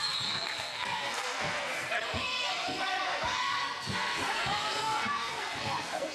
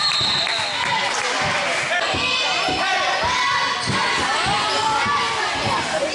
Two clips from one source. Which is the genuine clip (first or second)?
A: second